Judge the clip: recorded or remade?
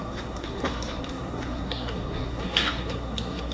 remade